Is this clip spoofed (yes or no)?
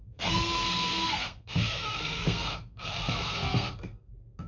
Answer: yes